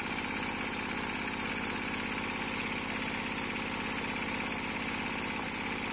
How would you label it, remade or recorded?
recorded